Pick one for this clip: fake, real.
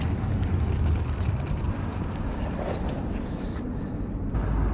real